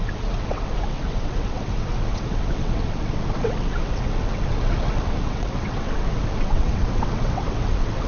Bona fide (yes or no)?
no